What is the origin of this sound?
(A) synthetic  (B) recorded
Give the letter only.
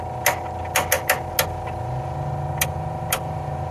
B